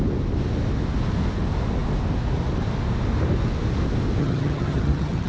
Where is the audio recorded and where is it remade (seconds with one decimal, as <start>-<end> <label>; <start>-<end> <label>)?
0.0-4.2 recorded; 4.2-5.3 remade